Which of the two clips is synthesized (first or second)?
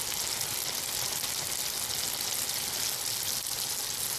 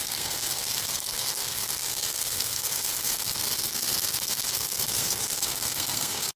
second